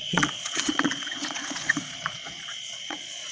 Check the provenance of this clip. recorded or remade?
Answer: remade